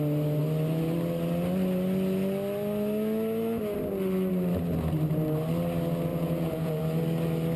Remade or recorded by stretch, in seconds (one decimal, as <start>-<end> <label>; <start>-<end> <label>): 0.0-6.1 recorded; 6.1-6.8 remade; 6.8-7.6 recorded